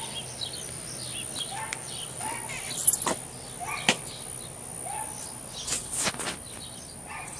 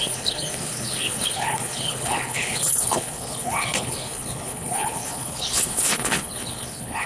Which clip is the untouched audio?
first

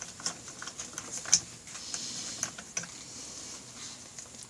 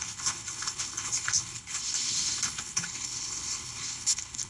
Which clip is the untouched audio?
first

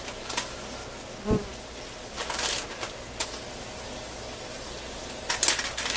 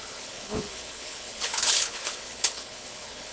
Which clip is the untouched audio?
first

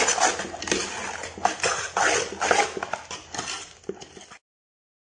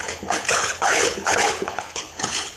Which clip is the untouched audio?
first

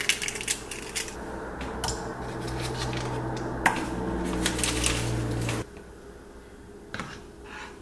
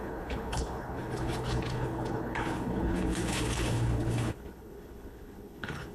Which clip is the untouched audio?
first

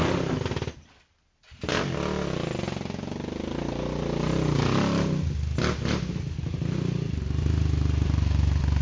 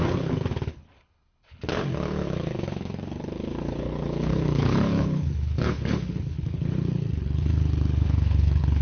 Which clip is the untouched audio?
first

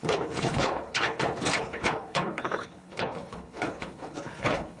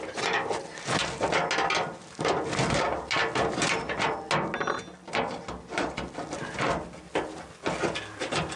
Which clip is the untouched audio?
second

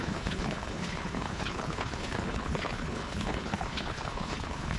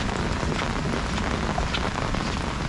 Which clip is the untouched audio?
second